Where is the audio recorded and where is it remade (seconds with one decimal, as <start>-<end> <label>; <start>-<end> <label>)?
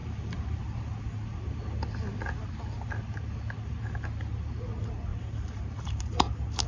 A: 0.0-0.6 remade; 0.6-5.1 recorded; 5.1-6.3 remade; 6.3-6.7 recorded